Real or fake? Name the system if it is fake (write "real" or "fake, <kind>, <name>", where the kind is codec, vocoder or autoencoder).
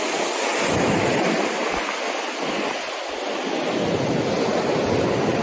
real